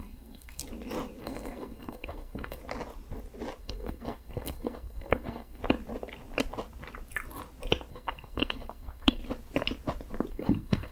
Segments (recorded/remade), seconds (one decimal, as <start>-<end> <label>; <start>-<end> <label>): 0.0-0.6 remade; 0.6-1.2 recorded; 1.2-2.6 remade; 2.6-3.6 recorded; 3.6-5.6 remade; 5.6-7.9 recorded; 7.9-9.2 remade; 9.2-10.3 recorded; 10.3-10.9 remade